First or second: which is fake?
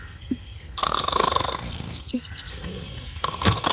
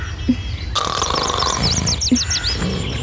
first